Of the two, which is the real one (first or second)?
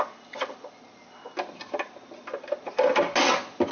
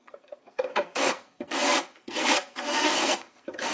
first